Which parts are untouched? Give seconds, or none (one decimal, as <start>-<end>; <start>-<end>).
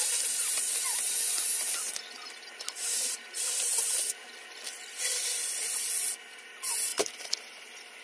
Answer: 0.0-6.9